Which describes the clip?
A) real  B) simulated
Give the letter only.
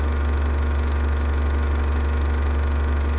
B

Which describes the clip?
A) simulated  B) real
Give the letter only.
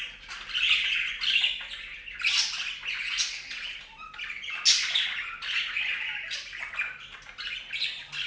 B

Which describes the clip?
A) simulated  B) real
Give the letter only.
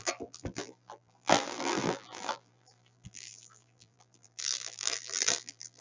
A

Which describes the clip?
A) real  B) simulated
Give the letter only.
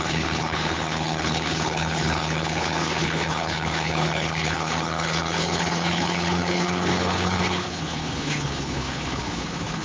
B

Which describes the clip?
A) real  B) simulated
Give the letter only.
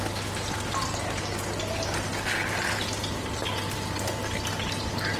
A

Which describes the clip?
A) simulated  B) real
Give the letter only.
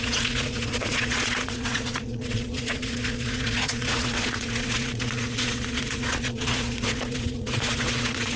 A